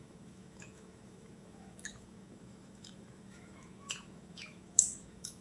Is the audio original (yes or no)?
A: no